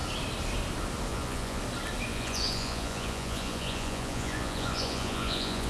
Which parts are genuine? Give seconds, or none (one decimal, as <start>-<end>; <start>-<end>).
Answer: 0.0-1.1; 1.6-2.1